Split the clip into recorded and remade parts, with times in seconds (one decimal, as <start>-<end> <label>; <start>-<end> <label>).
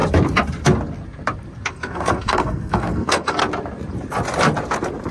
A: 0.0-1.7 recorded; 1.7-3.4 remade; 3.4-5.1 recorded